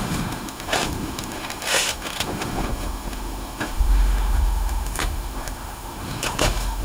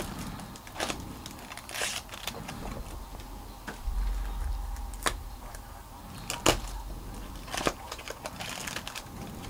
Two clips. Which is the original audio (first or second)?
second